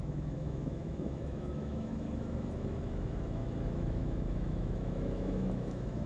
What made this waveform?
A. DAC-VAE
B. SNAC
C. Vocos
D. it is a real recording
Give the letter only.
A